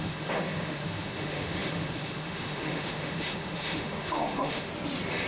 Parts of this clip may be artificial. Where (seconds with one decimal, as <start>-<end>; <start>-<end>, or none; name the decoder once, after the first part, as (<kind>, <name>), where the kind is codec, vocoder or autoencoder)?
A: 0.0-4.7 (autoencoder, DAC-VAE)